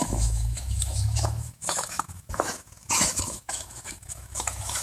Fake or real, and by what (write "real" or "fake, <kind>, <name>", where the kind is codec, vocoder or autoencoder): fake, autoencoder, DAC-VAE